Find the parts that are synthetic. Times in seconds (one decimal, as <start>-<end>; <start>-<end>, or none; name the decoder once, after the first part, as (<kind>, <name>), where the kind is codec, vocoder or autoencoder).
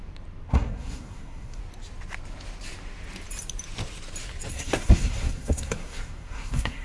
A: 0.5-1.6 (codec, SNAC); 4.5-6.8